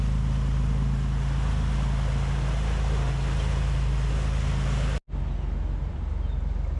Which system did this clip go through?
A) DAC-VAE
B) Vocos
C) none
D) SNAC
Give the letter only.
C